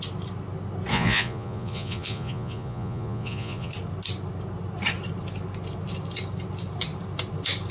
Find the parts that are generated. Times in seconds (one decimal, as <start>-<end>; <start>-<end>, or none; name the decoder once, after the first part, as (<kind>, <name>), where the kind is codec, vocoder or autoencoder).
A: 0.9-3.7 (vocoder, Vocos)